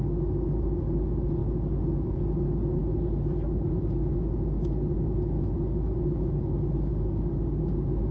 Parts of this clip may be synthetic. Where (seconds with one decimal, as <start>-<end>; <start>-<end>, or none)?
none